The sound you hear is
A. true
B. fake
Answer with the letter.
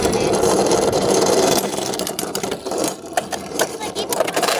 B